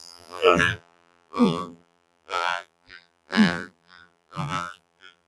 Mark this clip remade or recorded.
remade